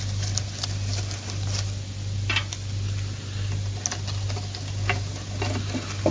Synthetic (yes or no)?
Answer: no